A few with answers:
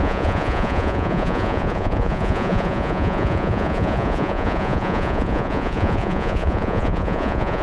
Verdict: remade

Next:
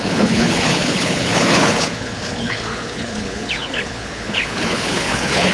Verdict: remade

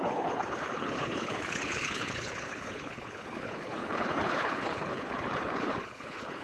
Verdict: remade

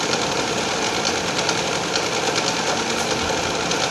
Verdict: recorded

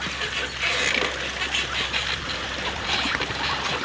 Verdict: remade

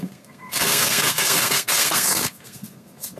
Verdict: remade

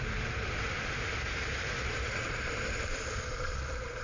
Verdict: remade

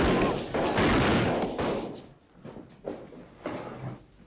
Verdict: recorded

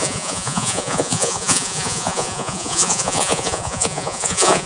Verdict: remade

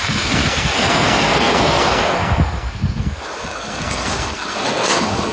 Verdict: remade